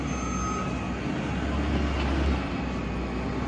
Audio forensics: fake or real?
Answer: real